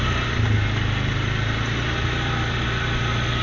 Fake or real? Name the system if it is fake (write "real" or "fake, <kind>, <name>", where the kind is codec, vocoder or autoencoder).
real